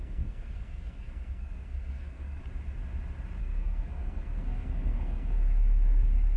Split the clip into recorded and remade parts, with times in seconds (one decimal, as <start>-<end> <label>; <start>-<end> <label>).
0.0-2.4 remade; 2.4-3.4 recorded; 3.4-6.4 remade